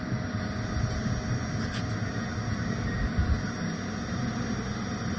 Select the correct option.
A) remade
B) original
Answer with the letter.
B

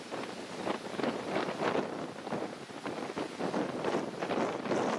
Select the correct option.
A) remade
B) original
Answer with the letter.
B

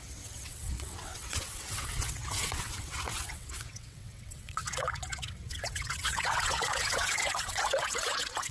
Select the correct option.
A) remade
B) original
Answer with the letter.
A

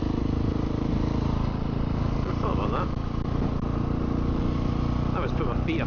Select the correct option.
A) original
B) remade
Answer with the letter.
A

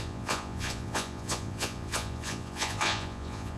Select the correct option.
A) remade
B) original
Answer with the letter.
A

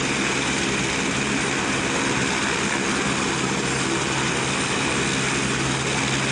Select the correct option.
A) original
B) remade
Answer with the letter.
A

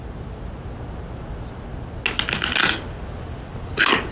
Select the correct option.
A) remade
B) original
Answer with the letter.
B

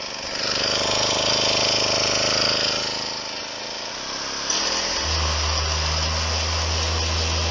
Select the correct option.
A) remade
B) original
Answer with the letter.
B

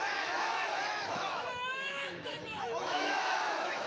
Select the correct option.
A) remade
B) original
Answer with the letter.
A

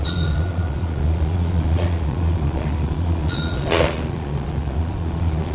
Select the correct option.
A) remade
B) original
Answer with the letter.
A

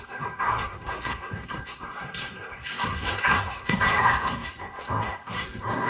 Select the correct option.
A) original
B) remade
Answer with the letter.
B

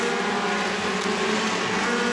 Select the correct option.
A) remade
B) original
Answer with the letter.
B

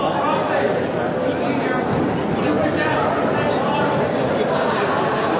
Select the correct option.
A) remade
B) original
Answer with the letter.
B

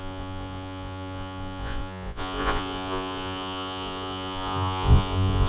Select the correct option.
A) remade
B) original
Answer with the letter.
A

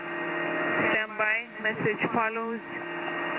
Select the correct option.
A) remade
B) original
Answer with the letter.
B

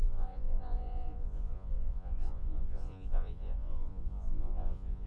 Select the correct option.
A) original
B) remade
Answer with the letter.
B